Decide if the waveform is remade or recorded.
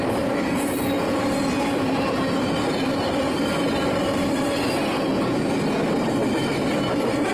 recorded